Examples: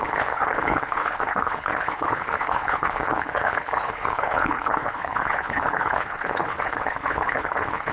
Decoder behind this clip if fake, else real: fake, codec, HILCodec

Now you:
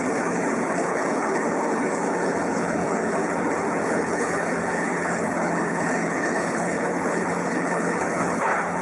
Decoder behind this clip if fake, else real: fake, codec, HILCodec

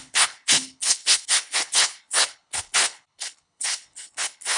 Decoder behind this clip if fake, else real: fake, codec, HILCodec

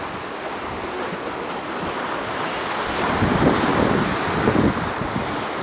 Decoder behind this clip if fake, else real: real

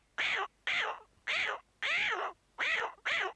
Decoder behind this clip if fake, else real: real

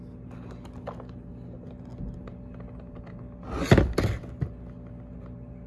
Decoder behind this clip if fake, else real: real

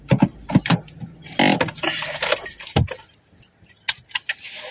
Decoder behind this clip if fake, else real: real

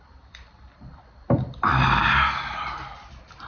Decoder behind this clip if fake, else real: real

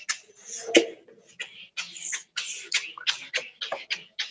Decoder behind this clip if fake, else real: real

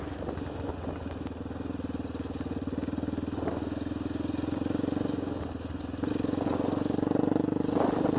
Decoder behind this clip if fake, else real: real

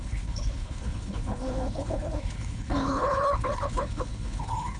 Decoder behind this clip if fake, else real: fake, codec, HILCodec